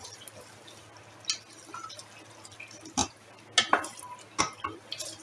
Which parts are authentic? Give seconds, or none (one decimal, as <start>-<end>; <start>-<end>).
0.0-5.2